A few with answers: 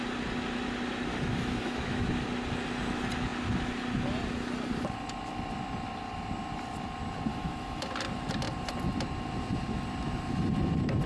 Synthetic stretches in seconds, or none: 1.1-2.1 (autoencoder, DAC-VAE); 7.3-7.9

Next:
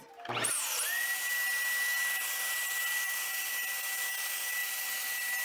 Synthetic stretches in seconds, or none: none

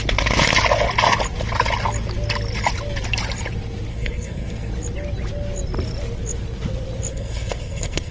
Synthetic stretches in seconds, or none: 3.9-4.7 (codec, SNAC); 7.1-8.1